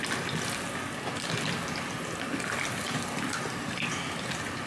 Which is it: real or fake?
real